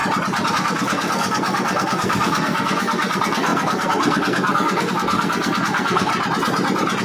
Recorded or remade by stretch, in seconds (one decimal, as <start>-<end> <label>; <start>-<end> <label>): 0.0-0.5 recorded; 0.5-6.1 remade; 6.1-7.0 recorded